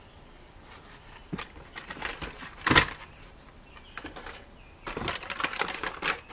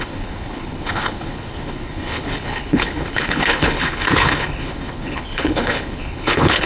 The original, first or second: first